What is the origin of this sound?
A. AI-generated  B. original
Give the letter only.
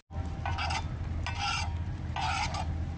B